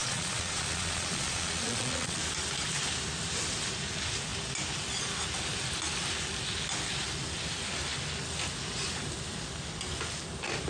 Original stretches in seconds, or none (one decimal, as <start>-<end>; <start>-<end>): 2.2-10.7